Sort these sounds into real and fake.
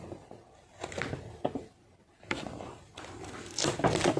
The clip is real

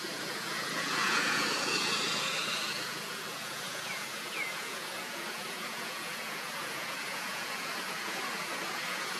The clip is fake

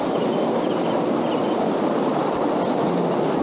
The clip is real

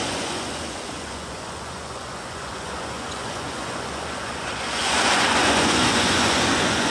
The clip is fake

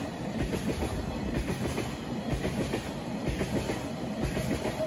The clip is real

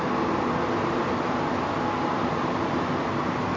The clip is real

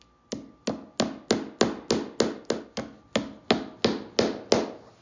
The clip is real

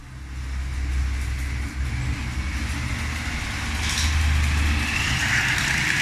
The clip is real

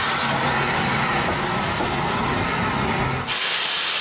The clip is real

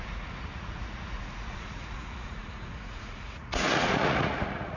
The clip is fake